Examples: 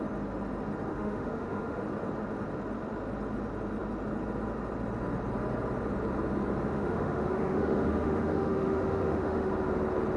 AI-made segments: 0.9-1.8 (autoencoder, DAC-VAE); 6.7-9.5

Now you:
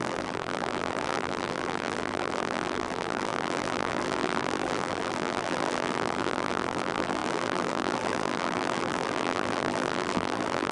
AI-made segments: 0.0-10.7 (vocoder, BigVGAN v2)

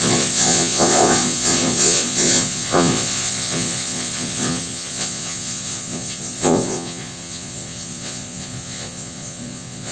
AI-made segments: 0.0-9.9 (vocoder, Vocos)

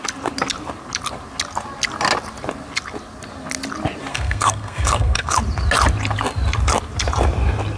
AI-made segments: 4.1-5.3 (codec, SNAC)

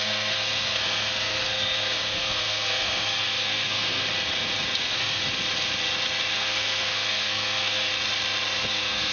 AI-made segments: 0.0-4.0 (codec, SNAC); 4.8-5.2; 6.3-7.9; 8.6-9.1

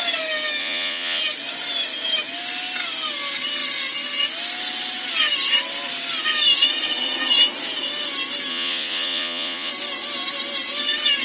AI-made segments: 0.6-1.2 (vocoder, Vocos); 8.5-9.7

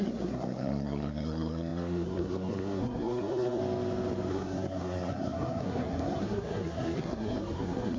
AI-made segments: 0.0-3.6 (codec, SNAC); 4.3-8.0